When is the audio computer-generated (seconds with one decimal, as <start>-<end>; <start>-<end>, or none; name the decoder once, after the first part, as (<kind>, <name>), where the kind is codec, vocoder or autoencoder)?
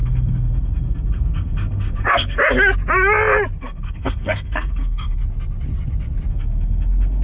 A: 0.0-2.4 (codec, SNAC); 3.6-5.2; 6.3-7.2